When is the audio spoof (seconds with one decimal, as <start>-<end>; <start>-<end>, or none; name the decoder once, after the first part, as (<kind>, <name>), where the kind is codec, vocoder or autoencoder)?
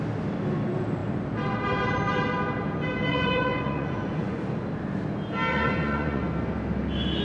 3.1-4.4 (vocoder, Vocos); 5.5-6.2